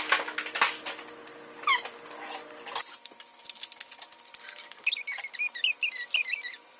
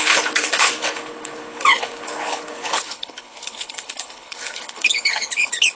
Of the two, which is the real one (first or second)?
first